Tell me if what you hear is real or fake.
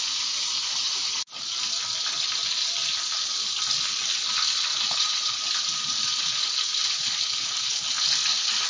real